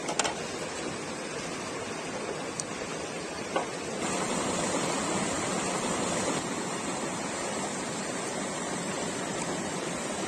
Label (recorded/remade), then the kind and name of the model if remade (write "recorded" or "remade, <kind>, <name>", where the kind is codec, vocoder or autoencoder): recorded